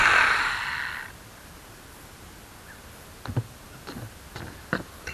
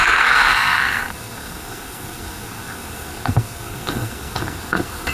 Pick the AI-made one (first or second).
second